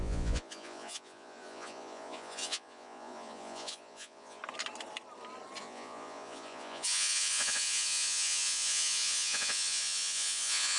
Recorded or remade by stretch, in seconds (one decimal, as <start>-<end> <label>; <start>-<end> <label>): 0.0-4.4 remade; 4.4-5.6 recorded; 5.6-10.8 remade